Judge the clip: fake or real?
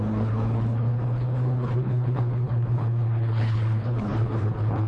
fake